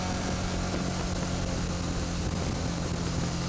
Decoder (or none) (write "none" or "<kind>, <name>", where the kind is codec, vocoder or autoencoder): none